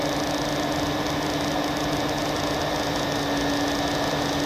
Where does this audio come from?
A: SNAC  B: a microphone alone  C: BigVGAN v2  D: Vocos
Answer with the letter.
B